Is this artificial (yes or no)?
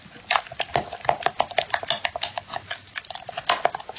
no